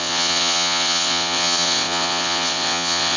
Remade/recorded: remade